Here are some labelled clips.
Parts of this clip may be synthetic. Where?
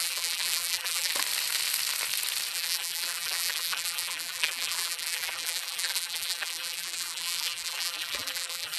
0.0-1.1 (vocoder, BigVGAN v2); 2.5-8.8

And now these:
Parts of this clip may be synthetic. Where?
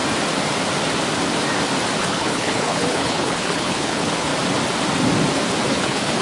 2.0-4.3 (codec, HILCodec); 5.7-6.2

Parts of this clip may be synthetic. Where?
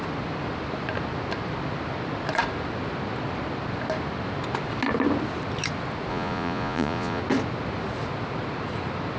6.1-7.2 (vocoder, Vocos)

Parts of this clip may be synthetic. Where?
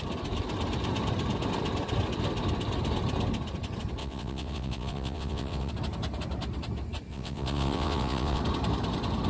4.0-5.7 (vocoder, WaveNeXt); 7.1-8.4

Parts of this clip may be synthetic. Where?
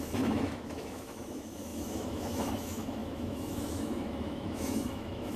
0.0-5.4 (autoencoder, DAC-VAE)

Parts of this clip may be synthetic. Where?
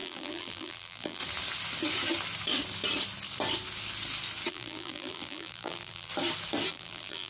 0.0-1.2 (vocoder, BigVGAN v2); 4.5-6.1; 6.7-7.3